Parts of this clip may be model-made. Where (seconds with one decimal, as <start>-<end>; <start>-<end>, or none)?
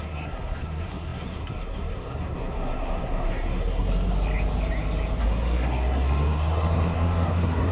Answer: 0.0-3.9; 5.2-7.7